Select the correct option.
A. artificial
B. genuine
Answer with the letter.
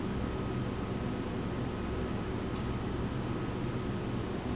B